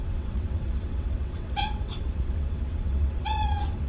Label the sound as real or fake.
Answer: fake